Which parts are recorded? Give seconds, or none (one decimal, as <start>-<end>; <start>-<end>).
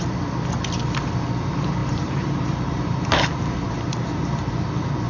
0.0-1.8; 4.5-5.1